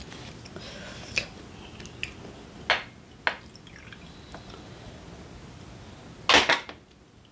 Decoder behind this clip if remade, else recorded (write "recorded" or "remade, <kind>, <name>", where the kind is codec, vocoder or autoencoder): recorded